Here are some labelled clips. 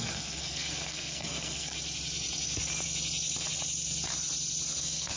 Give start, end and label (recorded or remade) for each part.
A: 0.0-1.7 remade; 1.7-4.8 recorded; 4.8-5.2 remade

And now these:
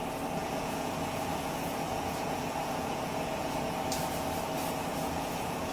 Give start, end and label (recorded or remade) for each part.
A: 0.0-0.4 recorded; 0.4-3.8 remade; 3.8-4.9 recorded; 4.9-5.7 remade

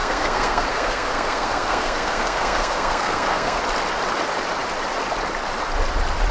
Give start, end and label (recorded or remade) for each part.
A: 0.0-3.6 remade; 3.6-6.3 recorded

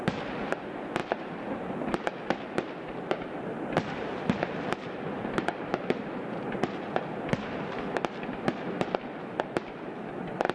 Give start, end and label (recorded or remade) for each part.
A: 0.0-10.5 recorded

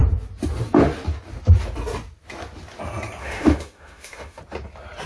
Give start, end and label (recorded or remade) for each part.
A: 0.0-3.2 recorded; 3.2-4.4 remade; 4.4-5.1 recorded